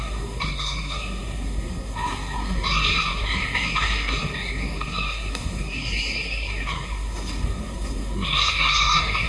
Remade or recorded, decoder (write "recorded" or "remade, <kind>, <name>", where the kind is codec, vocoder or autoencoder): remade, codec, SNAC